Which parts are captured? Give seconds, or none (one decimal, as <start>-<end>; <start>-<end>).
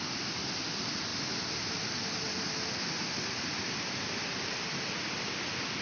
0.0-5.8